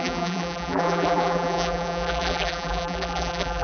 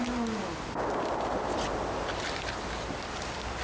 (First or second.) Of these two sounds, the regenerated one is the first